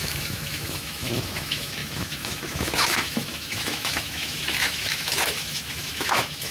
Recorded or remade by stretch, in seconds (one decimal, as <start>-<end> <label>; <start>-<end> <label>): 0.0-6.5 remade